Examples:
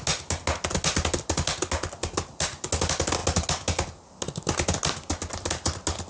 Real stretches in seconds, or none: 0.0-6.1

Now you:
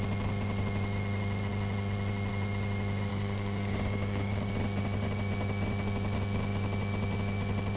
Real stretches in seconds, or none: 0.0-3.1; 4.5-7.8

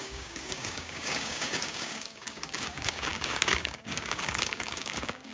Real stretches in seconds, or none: none

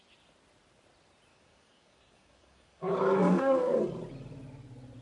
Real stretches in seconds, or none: 0.0-1.3; 3.8-5.0

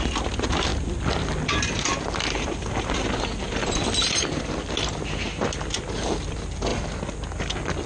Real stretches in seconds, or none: 0.0-7.9

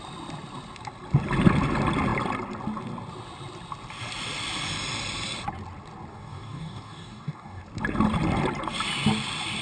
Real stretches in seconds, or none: 0.0-6.1; 7.6-9.6